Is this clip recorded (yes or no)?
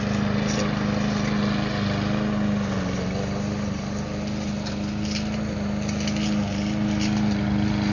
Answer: yes